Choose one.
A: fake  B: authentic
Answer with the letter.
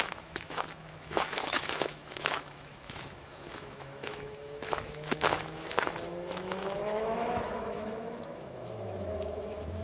A